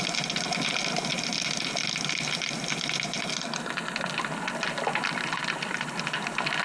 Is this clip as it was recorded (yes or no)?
yes